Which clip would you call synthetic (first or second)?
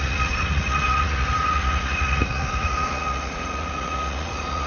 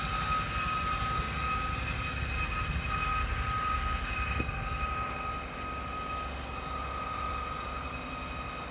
first